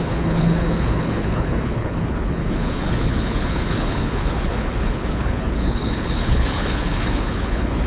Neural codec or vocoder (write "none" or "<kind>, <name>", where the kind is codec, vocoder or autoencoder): codec, HILCodec